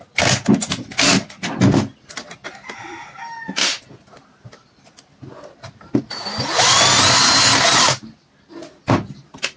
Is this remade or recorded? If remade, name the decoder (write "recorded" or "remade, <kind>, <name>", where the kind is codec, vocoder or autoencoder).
recorded